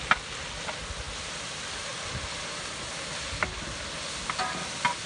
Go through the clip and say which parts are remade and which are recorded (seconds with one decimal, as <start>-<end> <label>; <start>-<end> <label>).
0.0-5.1 recorded